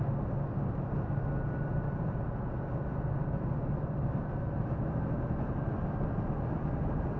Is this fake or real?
real